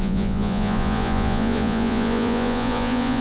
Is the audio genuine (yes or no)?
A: no